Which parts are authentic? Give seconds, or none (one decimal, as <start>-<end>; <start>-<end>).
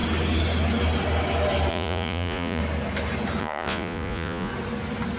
0.0-1.7; 2.6-3.4; 4.5-5.2